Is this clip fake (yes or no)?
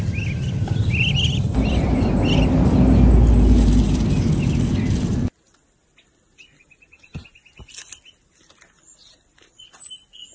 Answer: no